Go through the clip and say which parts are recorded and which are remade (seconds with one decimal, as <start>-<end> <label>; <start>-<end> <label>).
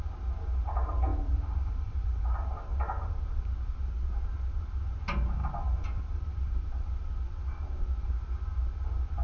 0.0-1.1 recorded; 1.1-2.2 remade; 2.2-5.4 recorded; 5.4-6.5 remade; 6.5-9.2 recorded